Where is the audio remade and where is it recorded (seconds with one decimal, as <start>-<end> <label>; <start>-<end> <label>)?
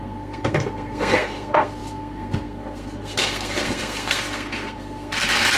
0.0-5.6 remade